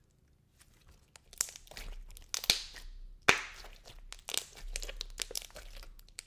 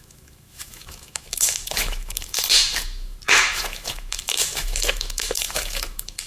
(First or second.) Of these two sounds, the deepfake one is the second